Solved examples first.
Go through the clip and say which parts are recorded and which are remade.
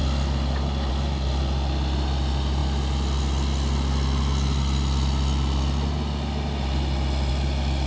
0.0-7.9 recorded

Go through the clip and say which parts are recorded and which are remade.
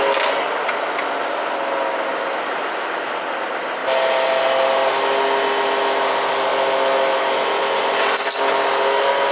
0.0-9.3 recorded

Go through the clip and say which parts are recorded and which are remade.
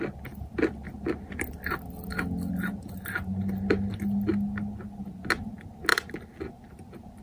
0.0-7.2 recorded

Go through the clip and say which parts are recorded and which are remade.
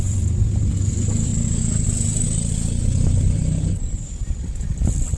0.0-1.3 remade; 1.3-2.8 recorded; 2.8-5.2 remade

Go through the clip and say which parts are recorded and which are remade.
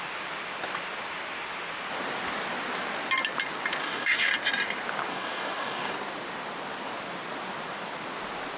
0.0-3.8 recorded; 3.8-4.3 remade; 4.3-5.1 recorded; 5.1-5.9 remade; 5.9-8.6 recorded